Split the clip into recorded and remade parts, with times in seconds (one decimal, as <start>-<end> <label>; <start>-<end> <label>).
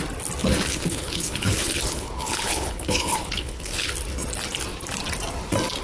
0.0-0.4 recorded; 0.4-3.9 remade; 3.9-5.8 recorded